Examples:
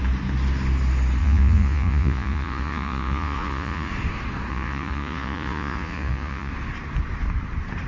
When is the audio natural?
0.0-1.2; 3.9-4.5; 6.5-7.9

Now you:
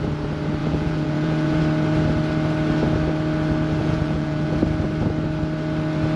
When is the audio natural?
0.0-0.6; 1.6-3.8; 4.6-6.2